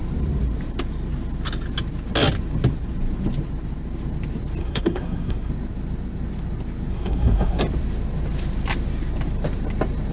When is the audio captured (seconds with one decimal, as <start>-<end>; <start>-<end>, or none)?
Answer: 0.0-4.6; 5.5-6.9; 7.6-10.1